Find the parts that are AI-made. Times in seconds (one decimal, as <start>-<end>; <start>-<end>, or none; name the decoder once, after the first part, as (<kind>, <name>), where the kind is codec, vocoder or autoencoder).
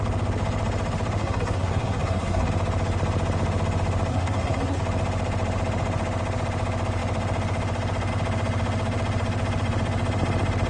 1.2-2.5 (codec, SNAC); 4.1-4.8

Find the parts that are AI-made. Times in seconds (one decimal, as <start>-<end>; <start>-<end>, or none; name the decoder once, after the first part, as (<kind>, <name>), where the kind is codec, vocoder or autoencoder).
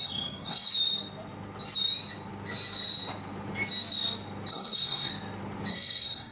0.0-0.7 (codec, SNAC); 4.5-5.1; 5.7-6.3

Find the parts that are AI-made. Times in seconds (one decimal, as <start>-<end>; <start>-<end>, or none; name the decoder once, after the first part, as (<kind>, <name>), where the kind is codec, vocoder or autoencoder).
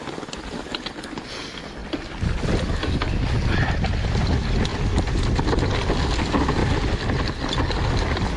none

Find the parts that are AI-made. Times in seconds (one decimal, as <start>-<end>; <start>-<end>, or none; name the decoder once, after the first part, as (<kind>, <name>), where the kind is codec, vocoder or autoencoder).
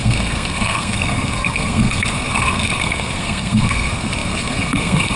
0.0-5.2 (codec, SNAC)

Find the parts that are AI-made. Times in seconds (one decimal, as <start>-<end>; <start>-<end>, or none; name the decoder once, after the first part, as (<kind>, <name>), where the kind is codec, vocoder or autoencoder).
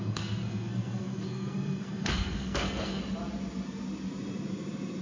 0.0-3.0 (codec, SNAC)